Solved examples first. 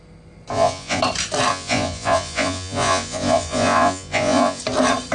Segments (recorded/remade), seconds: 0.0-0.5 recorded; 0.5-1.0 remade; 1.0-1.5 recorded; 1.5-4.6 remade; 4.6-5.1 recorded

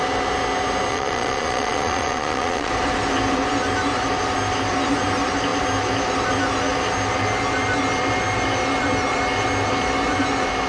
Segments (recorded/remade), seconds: 0.0-0.9 recorded; 0.9-2.7 remade; 2.7-10.7 recorded

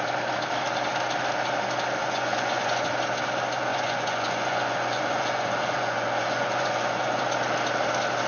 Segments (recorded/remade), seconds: 0.0-2.0 recorded; 2.0-2.9 remade; 2.9-3.7 recorded; 3.7-7.2 remade; 7.2-8.3 recorded

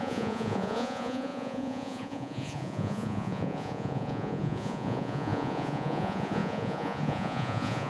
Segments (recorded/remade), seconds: 0.0-7.9 remade